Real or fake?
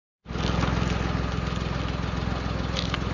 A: real